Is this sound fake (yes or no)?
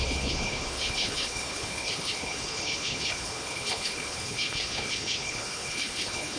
yes